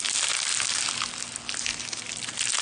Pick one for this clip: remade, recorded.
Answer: recorded